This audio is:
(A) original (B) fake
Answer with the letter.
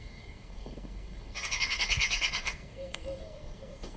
B